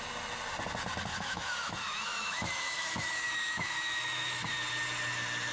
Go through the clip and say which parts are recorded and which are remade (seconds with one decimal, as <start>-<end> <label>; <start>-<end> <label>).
0.0-1.1 recorded; 1.1-4.4 remade; 4.4-5.5 recorded